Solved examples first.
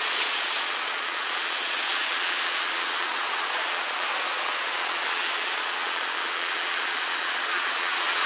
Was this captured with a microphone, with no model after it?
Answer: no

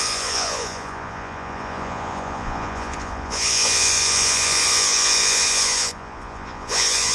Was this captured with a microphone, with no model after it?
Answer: no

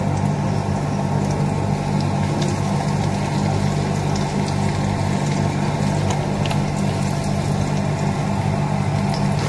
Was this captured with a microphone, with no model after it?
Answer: yes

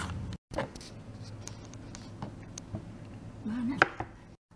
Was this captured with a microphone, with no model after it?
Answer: yes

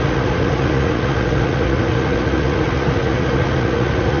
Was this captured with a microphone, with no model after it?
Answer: no